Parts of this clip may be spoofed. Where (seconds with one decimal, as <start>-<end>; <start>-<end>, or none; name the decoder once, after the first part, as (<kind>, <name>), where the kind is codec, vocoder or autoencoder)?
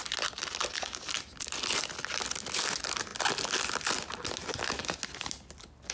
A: none